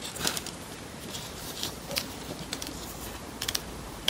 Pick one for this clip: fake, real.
fake